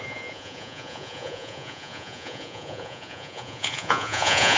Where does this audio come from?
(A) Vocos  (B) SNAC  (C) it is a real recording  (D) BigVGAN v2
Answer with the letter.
A